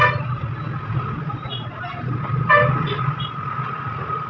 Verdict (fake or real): real